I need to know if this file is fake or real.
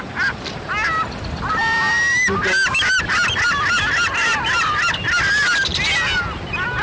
real